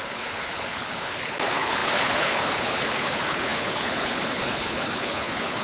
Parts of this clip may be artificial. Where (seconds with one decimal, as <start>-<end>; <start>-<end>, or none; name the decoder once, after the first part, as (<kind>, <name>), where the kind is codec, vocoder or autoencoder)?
0.0-5.6 (codec, HILCodec)